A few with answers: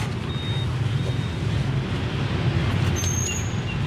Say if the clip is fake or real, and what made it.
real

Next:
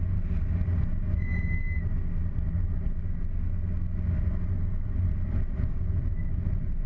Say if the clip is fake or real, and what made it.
real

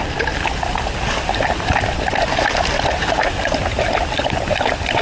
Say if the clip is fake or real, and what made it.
real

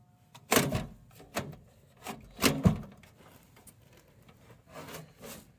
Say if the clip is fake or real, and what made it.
real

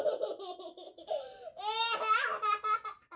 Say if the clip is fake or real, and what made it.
real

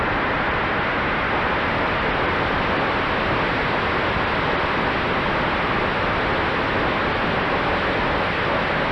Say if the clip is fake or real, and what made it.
real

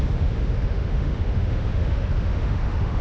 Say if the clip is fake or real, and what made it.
fake, autoencoder, DAC-VAE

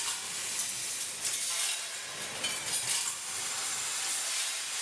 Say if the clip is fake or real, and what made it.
real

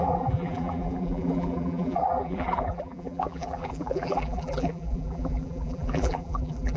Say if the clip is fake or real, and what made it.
fake, vocoder, BigVGAN v2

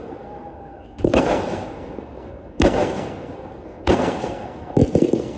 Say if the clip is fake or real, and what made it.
fake, codec, SNAC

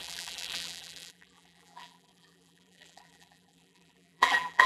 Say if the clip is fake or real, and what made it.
fake, vocoder, BigVGAN v2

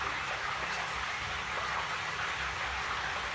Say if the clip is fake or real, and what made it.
real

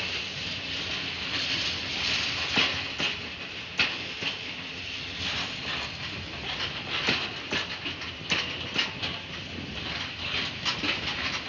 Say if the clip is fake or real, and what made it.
real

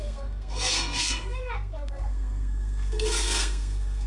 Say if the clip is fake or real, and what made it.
fake, codec, SNAC